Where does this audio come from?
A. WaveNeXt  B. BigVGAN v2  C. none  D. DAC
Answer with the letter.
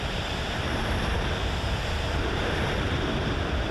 B